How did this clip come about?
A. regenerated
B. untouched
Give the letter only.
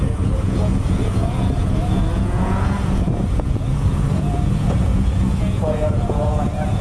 A